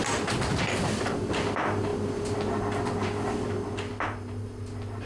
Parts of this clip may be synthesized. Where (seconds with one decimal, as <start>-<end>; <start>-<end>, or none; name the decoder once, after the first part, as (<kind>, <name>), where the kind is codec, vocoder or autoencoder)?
none